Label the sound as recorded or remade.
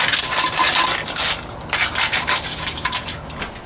recorded